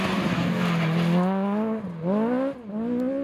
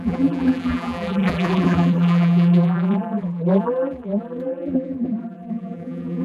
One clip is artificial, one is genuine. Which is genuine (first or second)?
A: first